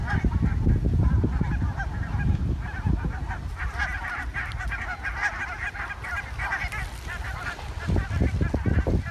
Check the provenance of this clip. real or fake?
real